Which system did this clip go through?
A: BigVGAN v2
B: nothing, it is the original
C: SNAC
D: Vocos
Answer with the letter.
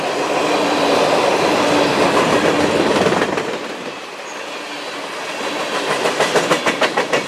B